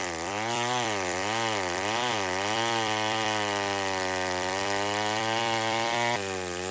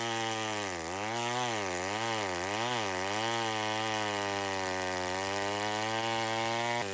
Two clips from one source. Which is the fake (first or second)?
first